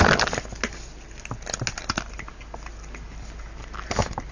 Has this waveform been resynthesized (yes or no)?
no